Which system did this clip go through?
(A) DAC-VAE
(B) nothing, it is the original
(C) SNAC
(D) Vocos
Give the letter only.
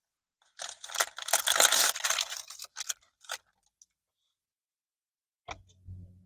B